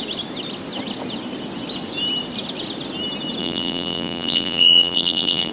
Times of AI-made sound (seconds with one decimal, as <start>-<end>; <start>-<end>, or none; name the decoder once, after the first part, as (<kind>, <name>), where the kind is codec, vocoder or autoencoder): 3.4-5.5 (vocoder, BigVGAN v2)